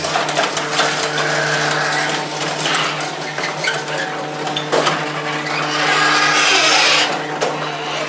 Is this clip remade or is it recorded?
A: recorded